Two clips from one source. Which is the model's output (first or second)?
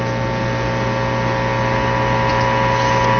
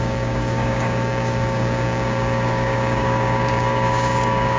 second